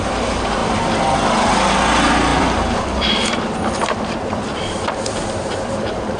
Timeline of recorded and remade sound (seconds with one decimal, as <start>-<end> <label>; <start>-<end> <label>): 0.0-6.2 remade